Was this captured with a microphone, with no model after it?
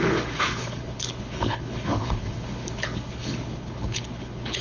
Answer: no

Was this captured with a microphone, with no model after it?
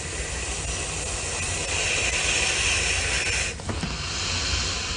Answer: yes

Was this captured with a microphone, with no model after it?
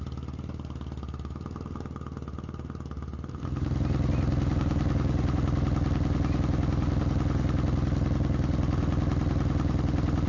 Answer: yes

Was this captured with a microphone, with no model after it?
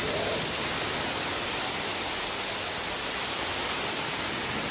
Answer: yes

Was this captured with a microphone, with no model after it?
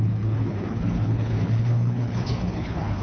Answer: no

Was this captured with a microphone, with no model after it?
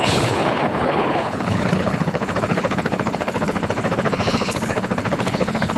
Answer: no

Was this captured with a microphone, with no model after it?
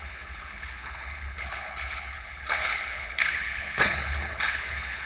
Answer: no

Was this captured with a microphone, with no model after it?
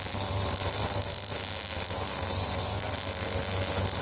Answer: yes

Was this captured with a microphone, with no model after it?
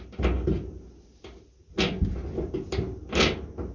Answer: yes